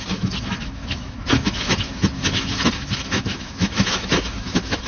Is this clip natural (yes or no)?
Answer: no